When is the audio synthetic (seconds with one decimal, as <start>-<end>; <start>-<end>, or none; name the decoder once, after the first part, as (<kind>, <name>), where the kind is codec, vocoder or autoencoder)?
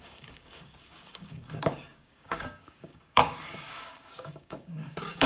0.0-5.3 (codec, DAC)